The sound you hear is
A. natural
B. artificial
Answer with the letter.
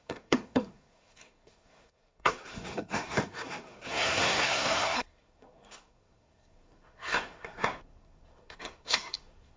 B